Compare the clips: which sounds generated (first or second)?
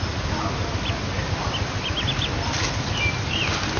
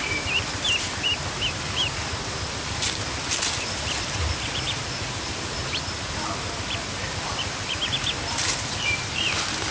second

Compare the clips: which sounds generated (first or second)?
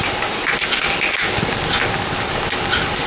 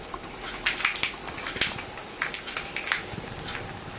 second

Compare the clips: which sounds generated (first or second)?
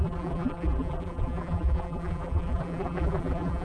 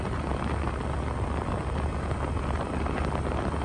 first